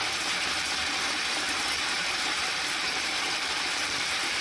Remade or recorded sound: remade